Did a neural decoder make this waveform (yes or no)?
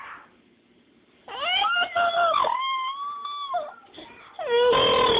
no